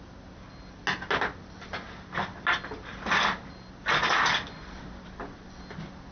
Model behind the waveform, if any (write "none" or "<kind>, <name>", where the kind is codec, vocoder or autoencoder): none